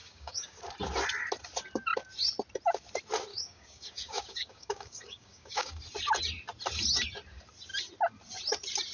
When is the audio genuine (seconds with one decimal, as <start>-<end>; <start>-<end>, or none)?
0.6-3.3; 5.7-8.9